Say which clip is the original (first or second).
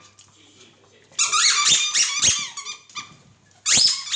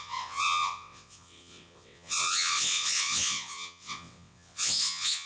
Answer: first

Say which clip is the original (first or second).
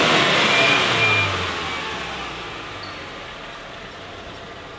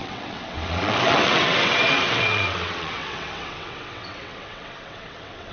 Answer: first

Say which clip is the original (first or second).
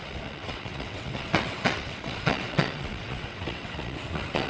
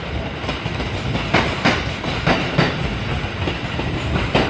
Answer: second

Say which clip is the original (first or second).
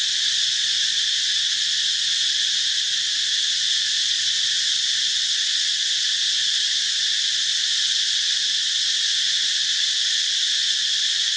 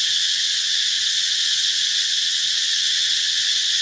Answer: first